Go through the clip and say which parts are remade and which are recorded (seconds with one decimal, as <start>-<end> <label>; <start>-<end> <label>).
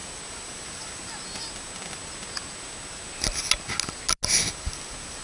0.0-5.2 recorded